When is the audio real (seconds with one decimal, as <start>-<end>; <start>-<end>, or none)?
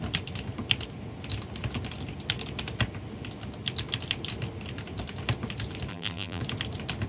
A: 0.0-5.9; 6.4-7.1